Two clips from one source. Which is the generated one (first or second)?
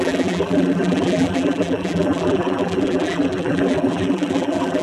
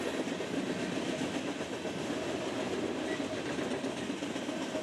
first